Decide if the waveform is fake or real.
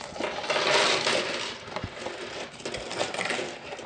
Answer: real